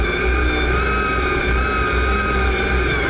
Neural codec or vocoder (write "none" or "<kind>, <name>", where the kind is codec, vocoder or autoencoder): none